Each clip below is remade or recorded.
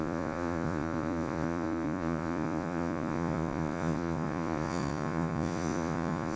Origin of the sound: remade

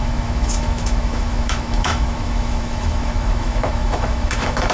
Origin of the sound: remade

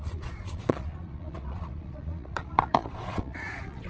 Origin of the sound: remade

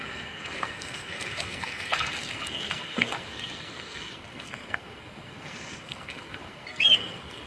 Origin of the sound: remade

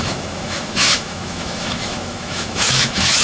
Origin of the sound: remade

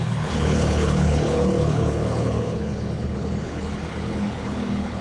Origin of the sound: remade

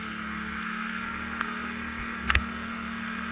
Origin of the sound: remade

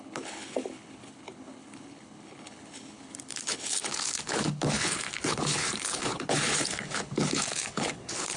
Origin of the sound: remade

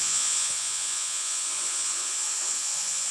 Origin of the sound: remade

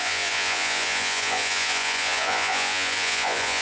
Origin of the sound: remade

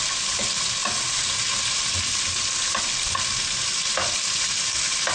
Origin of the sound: recorded